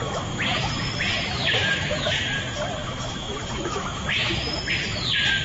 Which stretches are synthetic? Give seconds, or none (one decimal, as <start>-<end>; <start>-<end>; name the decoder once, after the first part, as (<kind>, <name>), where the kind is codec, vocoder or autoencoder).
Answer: 0.0-0.9 (autoencoder, DAC-VAE); 1.4-2.3; 2.8-4.6